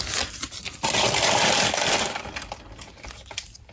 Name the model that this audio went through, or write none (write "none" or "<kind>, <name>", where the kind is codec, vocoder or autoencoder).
none